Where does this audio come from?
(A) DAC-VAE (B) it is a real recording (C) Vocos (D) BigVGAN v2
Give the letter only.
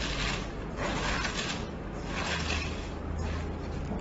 B